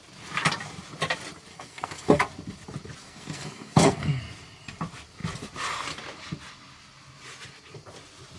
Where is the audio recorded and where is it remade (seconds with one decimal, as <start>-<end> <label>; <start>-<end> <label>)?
0.0-1.5 recorded; 1.5-2.2 remade; 2.2-3.0 recorded; 3.0-4.2 remade; 4.2-8.4 recorded